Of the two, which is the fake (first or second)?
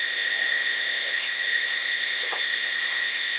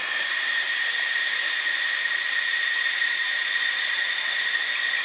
first